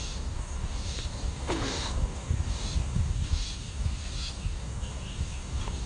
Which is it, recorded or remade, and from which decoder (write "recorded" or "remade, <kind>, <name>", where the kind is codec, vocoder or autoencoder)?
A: remade, codec, DAC